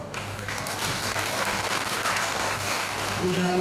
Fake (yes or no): yes